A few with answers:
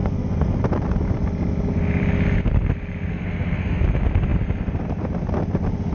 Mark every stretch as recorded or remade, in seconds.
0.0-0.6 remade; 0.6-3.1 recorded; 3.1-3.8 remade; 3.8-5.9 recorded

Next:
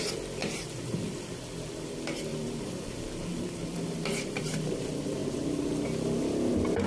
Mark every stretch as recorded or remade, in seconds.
0.0-0.4 recorded; 0.4-1.3 remade; 1.3-2.3 recorded; 2.3-4.5 remade; 4.5-6.9 recorded

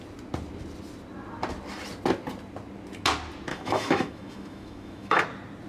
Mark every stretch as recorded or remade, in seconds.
0.0-3.5 recorded; 3.5-5.2 remade; 5.2-5.7 recorded

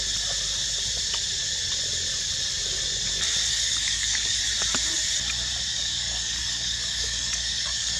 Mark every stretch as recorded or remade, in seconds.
0.0-3.5 recorded; 3.5-4.4 remade; 4.4-5.7 recorded; 5.7-8.0 remade

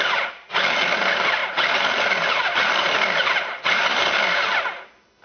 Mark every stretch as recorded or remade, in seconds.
0.0-5.2 recorded

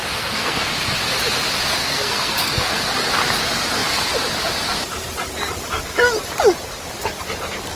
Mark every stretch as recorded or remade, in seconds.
0.0-0.7 remade; 0.7-1.8 recorded; 1.8-2.8 remade; 2.8-7.8 recorded

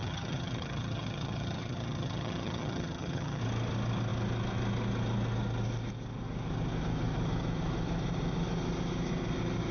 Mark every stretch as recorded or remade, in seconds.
0.0-3.4 remade; 3.4-9.7 recorded